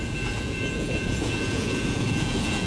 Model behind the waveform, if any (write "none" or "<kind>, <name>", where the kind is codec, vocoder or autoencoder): vocoder, Vocos